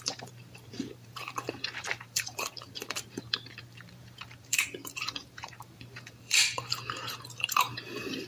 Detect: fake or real fake